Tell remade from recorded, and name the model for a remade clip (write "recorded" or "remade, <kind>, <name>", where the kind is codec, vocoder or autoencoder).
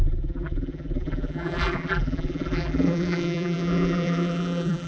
remade, vocoder, BigVGAN v2